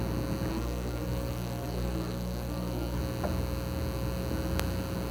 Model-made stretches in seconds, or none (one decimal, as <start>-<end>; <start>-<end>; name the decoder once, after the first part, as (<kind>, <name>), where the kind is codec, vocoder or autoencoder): 0.5-3.0 (codec, SNAC)